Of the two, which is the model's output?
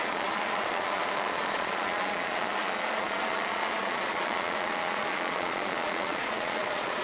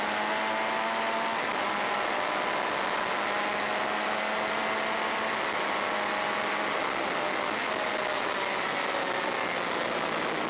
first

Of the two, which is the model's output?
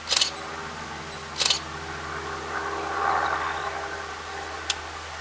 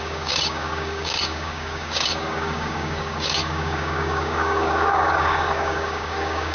second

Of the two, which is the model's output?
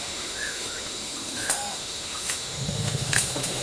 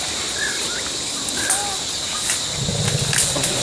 first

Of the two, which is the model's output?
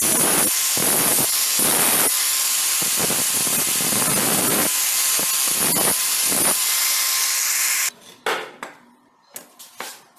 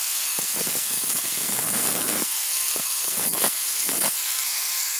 second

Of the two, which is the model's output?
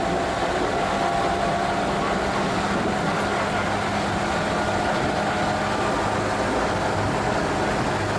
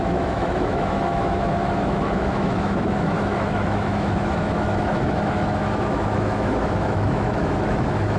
second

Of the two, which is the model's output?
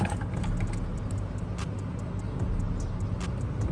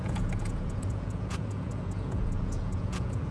second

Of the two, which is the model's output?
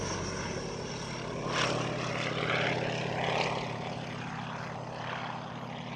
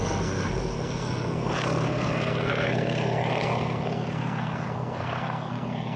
second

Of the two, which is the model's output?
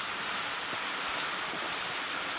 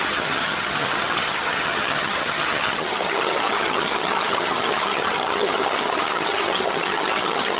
second